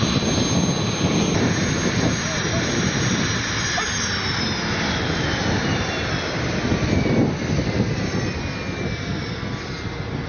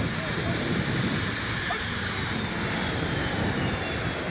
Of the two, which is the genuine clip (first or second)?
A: first